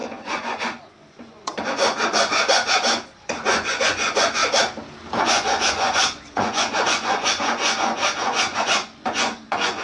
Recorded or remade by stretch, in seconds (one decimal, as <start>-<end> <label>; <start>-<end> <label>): 0.0-4.4 remade; 4.4-5.2 recorded; 5.2-9.8 remade